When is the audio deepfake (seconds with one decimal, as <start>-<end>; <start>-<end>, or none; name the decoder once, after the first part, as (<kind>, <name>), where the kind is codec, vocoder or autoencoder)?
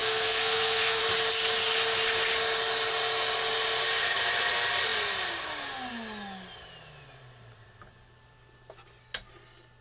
0.0-1.0 (codec, SNAC)